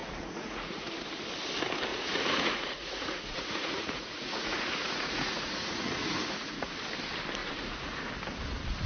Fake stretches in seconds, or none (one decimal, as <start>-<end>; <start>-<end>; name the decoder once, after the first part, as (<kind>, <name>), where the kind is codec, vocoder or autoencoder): 0.0-0.9 (vocoder, Vocos); 1.9-6.7; 7.4-8.1